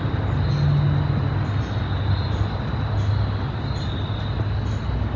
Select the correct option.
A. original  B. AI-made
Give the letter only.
A